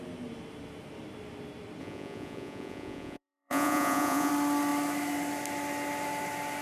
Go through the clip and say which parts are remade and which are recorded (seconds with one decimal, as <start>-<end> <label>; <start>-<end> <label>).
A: 0.0-1.8 recorded; 1.8-4.3 remade; 4.3-6.6 recorded